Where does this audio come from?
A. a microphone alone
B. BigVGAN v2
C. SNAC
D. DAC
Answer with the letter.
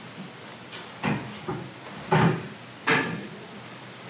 A